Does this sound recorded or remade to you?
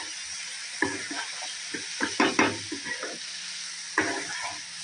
recorded